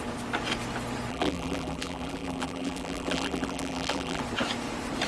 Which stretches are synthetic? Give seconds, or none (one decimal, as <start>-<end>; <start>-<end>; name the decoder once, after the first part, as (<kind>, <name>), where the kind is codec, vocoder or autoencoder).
1.1-4.2 (vocoder, BigVGAN v2)